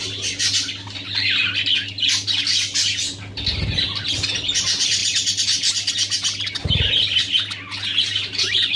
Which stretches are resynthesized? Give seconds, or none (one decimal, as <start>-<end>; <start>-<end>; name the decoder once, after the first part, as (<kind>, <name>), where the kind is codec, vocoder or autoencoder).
none